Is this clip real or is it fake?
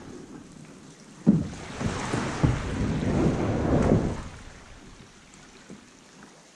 real